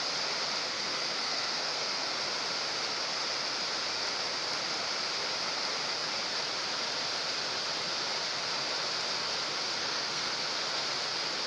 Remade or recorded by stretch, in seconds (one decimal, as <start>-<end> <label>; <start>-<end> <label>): 0.0-0.7 recorded; 0.7-2.1 remade; 2.1-9.8 recorded; 9.8-10.3 remade; 10.3-11.5 recorded